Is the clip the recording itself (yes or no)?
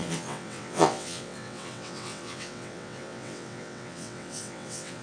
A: no